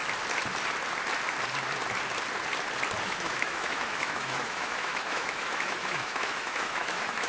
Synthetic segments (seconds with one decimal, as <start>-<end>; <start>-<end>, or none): 3.0-7.3